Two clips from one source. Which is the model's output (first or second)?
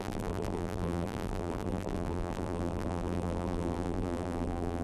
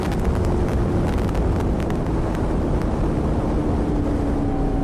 first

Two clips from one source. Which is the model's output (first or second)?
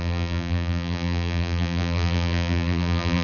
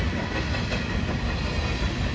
first